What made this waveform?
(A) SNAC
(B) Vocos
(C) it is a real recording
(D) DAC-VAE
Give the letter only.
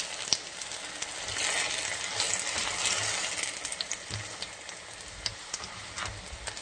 C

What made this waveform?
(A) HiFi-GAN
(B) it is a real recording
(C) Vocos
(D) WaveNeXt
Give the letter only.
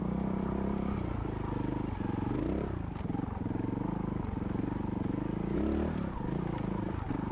B